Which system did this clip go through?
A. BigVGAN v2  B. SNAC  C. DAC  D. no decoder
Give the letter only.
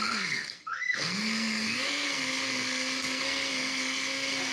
B